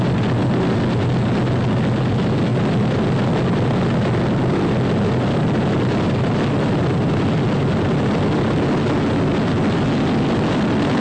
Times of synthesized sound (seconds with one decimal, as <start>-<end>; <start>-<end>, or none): none